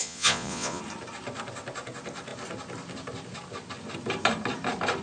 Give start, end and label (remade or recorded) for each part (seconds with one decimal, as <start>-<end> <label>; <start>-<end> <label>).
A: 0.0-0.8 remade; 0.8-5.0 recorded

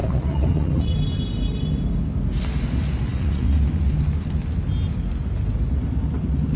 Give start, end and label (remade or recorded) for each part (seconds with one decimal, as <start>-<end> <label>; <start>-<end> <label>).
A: 0.0-0.9 remade; 0.9-3.1 recorded; 3.1-3.6 remade; 3.6-6.6 recorded

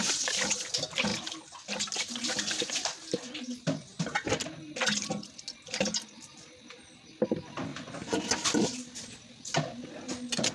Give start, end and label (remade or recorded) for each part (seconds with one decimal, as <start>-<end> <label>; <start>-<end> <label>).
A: 0.0-7.7 recorded; 7.7-8.2 remade; 8.2-10.5 recorded